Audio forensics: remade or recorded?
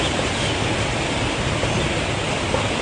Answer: recorded